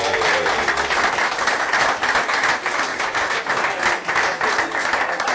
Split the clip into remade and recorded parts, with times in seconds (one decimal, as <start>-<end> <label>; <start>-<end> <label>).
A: 0.0-2.9 recorded; 2.9-3.5 remade; 3.5-5.3 recorded